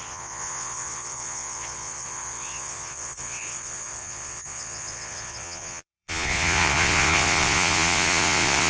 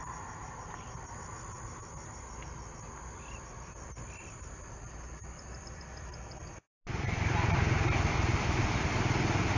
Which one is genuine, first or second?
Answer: second